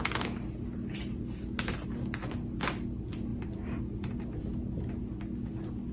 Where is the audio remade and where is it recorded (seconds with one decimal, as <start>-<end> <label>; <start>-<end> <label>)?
0.0-5.9 recorded